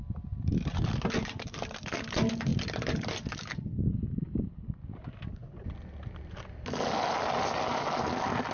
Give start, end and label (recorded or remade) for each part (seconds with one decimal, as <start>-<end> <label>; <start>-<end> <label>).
0.0-8.5 recorded

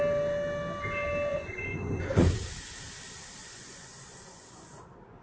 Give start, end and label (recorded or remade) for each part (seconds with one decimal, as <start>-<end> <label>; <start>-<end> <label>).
0.0-1.3 recorded; 1.3-2.3 remade; 2.3-3.4 recorded; 3.4-4.8 remade; 4.8-5.2 recorded